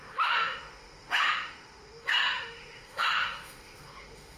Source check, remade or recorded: remade